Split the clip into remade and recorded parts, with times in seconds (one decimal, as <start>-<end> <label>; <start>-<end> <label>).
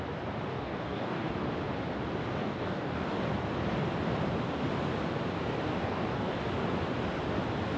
0.0-0.5 recorded; 0.5-1.3 remade; 1.3-2.4 recorded; 2.4-3.2 remade; 3.2-5.7 recorded; 5.7-6.4 remade; 6.4-7.8 recorded